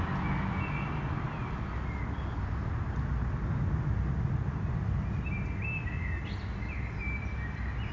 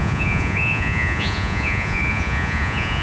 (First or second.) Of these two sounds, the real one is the first